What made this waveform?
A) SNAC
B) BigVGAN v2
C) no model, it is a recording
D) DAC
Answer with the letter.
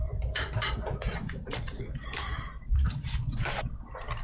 B